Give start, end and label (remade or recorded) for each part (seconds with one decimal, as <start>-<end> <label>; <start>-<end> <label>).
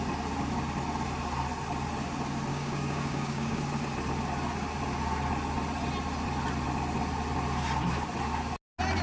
0.0-2.5 recorded; 2.5-3.6 remade; 3.6-9.0 recorded